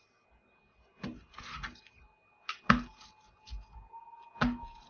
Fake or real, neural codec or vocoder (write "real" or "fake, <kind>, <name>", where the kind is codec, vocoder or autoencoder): real